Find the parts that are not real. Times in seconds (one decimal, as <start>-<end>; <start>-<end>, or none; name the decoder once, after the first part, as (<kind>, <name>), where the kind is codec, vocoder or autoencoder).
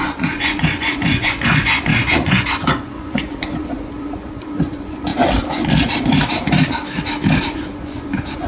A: 0.0-5.1 (vocoder, Vocos); 7.4-8.5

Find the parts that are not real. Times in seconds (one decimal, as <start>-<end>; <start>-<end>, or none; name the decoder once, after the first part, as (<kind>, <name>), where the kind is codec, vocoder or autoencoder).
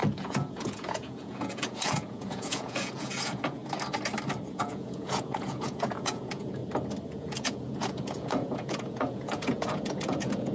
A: 0.0-3.6 (vocoder, Vocos); 4.5-6.6; 7.1-10.5